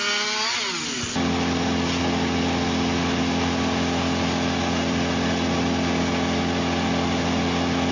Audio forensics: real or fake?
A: real